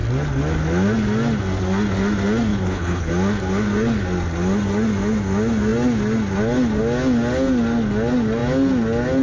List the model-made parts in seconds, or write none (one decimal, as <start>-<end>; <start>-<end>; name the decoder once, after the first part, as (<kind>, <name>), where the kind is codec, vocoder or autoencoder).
2.5-3.1 (codec, HILCodec)